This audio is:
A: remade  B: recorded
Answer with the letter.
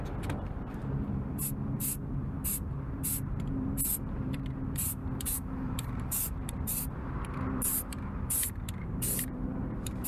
A